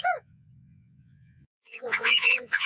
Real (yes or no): no